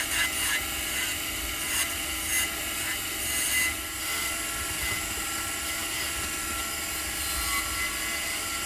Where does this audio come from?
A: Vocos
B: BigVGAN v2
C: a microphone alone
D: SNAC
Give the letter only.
C